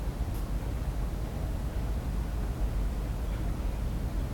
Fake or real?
real